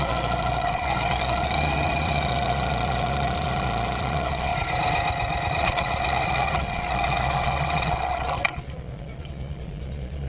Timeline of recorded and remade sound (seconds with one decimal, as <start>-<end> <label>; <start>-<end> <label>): 0.0-4.5 remade; 4.5-5.5 recorded; 5.5-10.3 remade